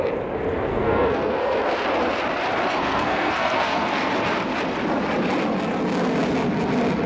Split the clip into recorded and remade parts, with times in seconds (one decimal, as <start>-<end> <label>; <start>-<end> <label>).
0.0-0.7 recorded; 0.7-1.6 remade; 1.6-2.8 recorded; 2.8-4.1 remade; 4.1-7.1 recorded